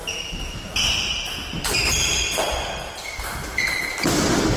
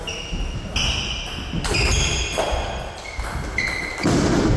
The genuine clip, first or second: second